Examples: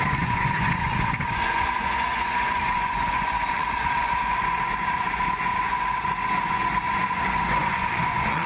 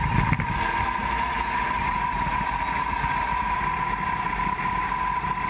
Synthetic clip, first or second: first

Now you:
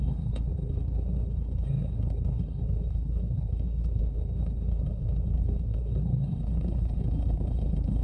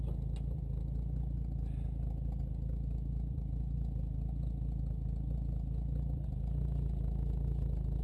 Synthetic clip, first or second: first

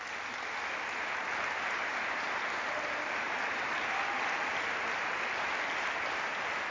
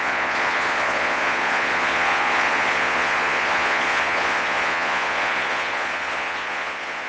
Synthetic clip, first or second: second